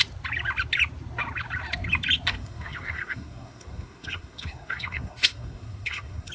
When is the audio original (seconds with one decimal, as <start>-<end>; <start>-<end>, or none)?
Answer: 0.0-2.3